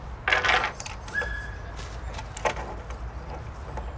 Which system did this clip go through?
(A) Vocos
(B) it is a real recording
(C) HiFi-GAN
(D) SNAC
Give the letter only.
B